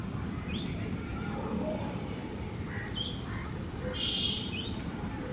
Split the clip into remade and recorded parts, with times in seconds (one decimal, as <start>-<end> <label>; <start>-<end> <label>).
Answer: 0.0-1.1 remade; 1.1-1.8 recorded; 1.8-2.2 remade; 2.2-4.1 recorded; 4.1-5.3 remade